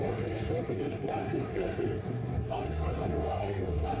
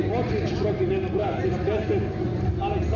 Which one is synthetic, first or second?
first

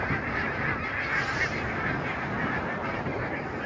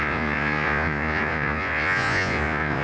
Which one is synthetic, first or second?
second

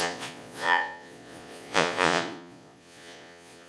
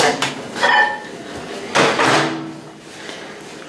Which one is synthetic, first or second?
first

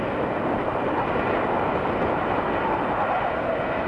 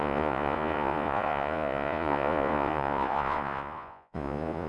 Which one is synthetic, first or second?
second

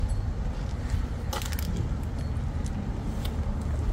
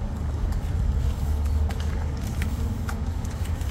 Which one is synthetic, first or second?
second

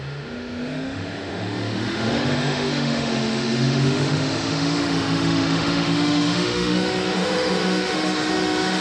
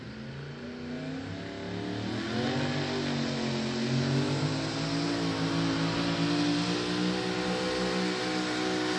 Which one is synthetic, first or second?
first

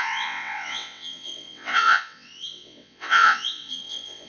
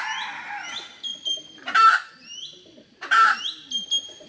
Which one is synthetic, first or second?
first